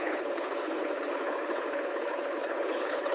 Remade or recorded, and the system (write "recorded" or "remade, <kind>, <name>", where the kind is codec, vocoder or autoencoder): remade, codec, HILCodec